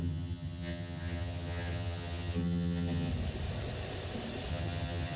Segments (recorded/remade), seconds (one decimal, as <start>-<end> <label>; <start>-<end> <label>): 0.0-3.1 remade; 3.1-4.5 recorded; 4.5-5.2 remade